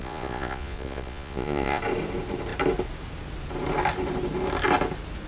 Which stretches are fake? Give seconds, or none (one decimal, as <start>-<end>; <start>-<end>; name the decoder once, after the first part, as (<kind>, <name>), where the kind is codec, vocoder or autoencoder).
0.0-1.8 (vocoder, Vocos)